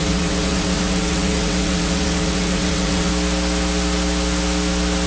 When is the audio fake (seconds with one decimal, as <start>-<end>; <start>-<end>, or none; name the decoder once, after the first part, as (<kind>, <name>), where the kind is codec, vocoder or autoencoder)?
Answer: 0.0-3.1 (vocoder, WaveNeXt)